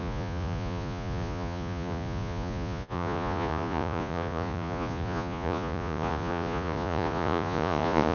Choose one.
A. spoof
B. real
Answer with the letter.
A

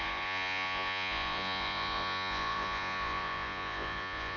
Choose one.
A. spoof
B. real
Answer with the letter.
A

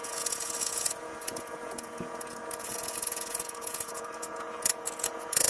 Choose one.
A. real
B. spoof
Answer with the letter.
B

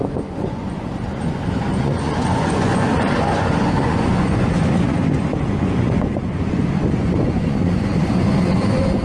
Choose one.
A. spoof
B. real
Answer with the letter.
A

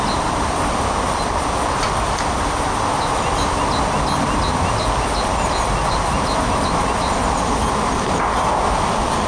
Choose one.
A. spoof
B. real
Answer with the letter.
B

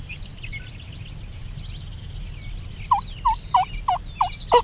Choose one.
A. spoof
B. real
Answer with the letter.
B